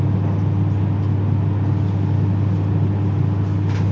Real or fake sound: real